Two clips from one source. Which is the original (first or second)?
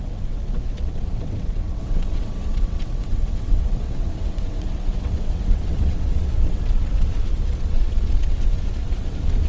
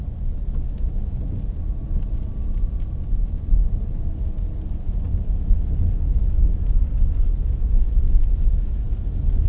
second